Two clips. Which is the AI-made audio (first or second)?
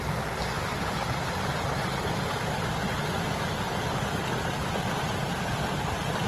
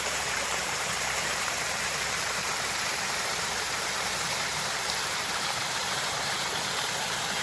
second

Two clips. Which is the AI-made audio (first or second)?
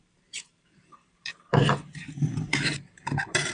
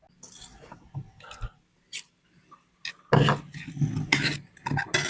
first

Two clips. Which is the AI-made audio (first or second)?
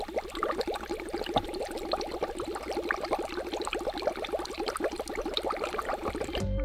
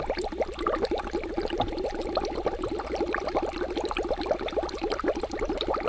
second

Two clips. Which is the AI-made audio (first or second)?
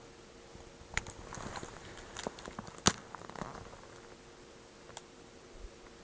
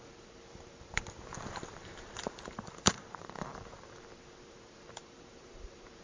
second